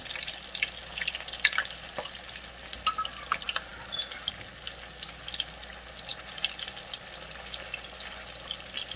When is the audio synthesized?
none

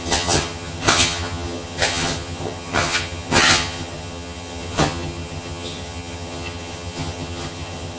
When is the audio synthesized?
0.0-8.0

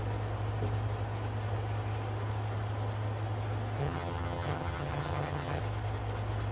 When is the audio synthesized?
3.8-5.6